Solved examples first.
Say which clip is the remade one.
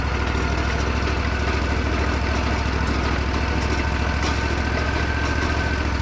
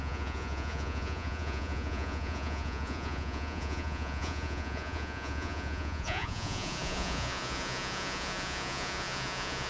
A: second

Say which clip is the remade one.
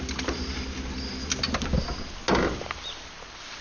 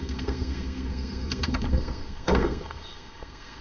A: second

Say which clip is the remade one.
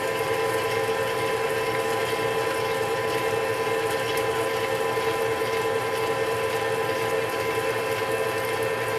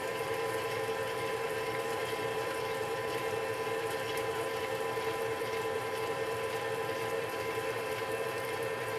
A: second